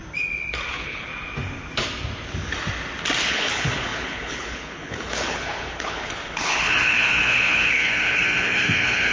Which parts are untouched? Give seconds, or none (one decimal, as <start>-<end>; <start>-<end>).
0.0-0.7; 1.1-3.3